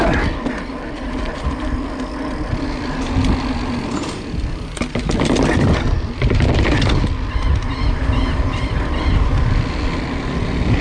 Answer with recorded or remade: recorded